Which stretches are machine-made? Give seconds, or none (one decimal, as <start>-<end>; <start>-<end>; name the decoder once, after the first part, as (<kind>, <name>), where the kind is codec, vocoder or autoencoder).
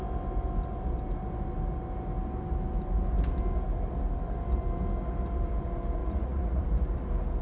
6.0-6.6 (vocoder, Vocos)